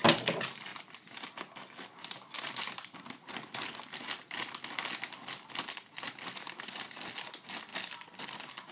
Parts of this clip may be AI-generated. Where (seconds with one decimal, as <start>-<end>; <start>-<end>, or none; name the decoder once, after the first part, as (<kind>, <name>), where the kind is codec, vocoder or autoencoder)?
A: none

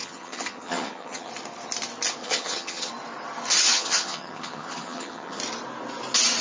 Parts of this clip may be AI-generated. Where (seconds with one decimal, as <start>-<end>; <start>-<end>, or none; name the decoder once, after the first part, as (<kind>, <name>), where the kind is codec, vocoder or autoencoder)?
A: 0.0-1.3 (vocoder, HiFi-GAN); 2.2-2.9; 3.7-5.4

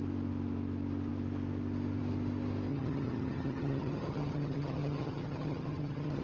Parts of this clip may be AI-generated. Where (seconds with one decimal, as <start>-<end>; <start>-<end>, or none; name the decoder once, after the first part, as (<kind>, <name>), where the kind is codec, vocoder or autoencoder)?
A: 2.7-6.2 (vocoder, HiFi-GAN)

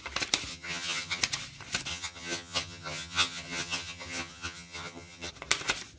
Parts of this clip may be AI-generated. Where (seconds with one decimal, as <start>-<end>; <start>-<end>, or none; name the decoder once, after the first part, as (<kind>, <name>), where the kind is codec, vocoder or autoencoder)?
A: 0.5-1.2 (vocoder, HiFi-GAN); 1.9-5.3

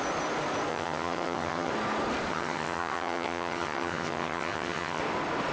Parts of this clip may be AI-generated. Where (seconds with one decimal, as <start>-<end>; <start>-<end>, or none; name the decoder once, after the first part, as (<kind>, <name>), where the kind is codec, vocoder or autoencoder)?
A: 0.7-1.7 (vocoder, HiFi-GAN); 2.3-5.0

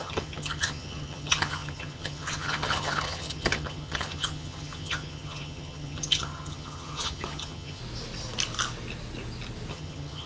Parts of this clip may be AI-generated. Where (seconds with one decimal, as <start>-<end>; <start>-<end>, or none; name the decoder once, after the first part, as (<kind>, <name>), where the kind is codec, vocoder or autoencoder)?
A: 0.0-7.8 (vocoder, HiFi-GAN); 9.7-10.3